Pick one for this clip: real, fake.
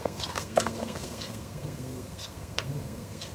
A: fake